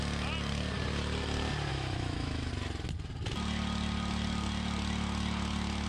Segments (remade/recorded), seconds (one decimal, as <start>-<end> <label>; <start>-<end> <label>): 0.0-1.7 recorded; 1.7-2.5 remade; 2.5-5.9 recorded